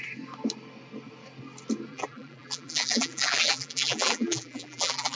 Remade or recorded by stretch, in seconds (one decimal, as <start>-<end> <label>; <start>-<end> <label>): 0.0-1.9 recorded; 1.9-5.2 remade